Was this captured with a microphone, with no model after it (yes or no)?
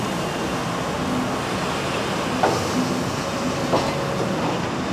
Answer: yes